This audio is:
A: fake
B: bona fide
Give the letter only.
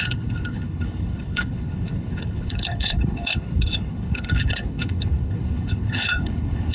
A